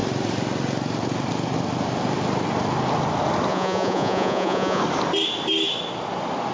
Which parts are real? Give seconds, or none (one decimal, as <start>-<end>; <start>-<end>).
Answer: 0.0-3.5; 4.8-6.5